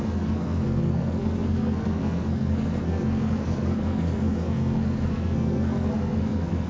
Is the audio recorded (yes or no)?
no